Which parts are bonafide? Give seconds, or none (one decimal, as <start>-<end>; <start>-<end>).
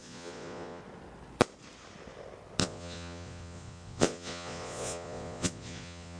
0.8-2.6